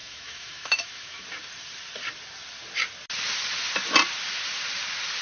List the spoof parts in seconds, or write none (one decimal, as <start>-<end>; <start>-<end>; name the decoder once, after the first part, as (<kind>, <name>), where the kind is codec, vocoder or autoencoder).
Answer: 0.0-1.2 (autoencoder, DAC-VAE)